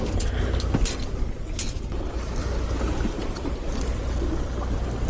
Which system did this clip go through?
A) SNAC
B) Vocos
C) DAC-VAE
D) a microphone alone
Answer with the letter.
D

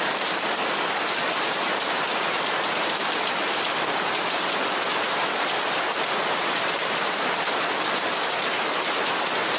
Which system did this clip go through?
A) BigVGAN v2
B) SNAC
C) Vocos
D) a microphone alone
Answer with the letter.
D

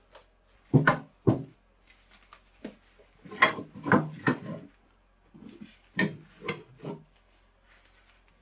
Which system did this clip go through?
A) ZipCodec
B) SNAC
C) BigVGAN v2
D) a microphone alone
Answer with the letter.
C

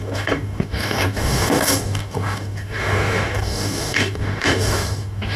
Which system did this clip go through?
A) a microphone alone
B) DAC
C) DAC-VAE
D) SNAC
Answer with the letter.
B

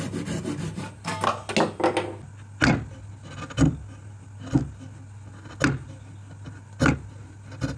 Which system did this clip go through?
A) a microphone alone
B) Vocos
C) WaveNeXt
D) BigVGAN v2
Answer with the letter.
A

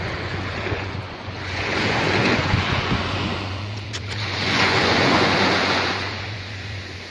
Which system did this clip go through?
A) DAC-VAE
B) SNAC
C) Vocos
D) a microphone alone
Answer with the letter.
C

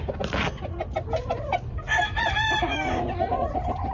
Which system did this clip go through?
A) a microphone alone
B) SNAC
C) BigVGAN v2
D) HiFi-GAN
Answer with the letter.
A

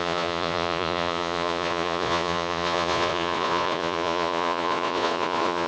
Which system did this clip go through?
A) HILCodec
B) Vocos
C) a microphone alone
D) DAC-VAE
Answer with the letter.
B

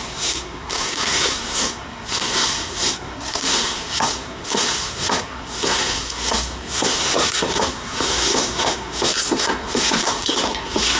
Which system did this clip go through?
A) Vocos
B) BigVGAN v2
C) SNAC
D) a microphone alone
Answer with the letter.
C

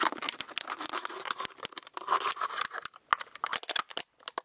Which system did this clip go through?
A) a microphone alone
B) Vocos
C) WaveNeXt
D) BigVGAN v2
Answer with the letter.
A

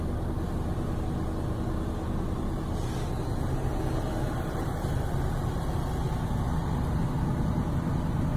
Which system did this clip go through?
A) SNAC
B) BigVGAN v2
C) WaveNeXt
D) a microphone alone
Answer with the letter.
D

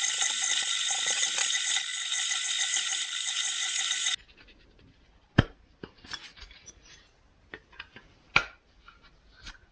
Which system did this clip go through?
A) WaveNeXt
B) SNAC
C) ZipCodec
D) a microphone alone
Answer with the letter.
D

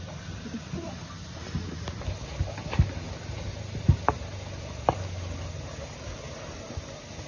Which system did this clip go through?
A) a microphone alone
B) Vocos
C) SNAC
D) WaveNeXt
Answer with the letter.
A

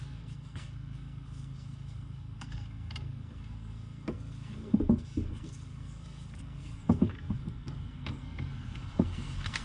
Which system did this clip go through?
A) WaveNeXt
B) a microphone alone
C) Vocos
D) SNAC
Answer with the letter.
D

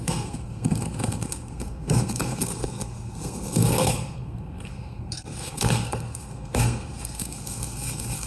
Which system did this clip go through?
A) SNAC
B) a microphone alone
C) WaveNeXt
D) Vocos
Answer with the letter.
A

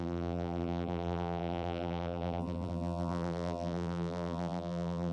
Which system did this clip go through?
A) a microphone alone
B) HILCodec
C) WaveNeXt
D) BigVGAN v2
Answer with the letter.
D